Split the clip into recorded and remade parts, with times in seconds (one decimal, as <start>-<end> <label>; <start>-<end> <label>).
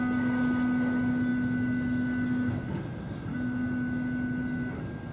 0.0-5.1 recorded